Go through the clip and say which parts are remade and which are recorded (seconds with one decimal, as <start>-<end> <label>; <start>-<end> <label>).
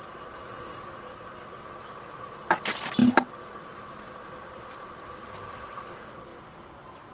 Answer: 0.0-6.3 recorded; 6.3-7.1 remade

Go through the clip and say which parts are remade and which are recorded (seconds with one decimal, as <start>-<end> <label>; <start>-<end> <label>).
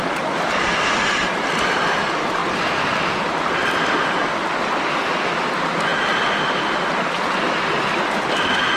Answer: 0.0-2.4 remade; 2.4-3.8 recorded; 3.8-5.9 remade; 5.9-7.8 recorded; 7.8-8.8 remade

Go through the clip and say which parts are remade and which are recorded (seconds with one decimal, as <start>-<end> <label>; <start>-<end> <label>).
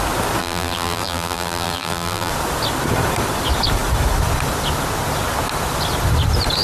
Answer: 0.0-0.4 recorded; 0.4-2.3 remade; 2.3-6.6 recorded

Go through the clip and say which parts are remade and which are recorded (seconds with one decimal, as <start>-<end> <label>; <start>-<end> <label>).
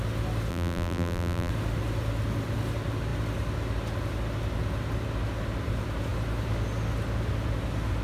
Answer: 0.0-0.5 recorded; 0.5-1.5 remade; 1.5-8.0 recorded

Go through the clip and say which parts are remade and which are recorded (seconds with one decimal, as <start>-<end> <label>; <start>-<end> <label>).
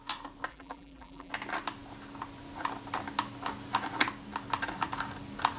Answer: 0.0-0.5 recorded; 0.5-1.3 remade; 1.3-5.6 recorded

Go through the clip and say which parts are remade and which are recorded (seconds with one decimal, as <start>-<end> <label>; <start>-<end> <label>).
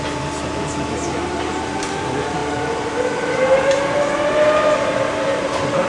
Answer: 0.0-5.9 recorded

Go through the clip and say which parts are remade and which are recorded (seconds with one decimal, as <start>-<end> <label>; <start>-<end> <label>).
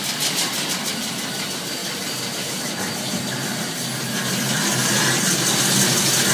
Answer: 0.0-6.3 recorded